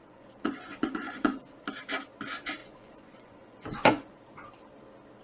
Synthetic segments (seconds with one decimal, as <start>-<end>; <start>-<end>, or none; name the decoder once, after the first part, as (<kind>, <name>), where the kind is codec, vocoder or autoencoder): 0.0-1.5 (vocoder, Vocos); 2.6-4.2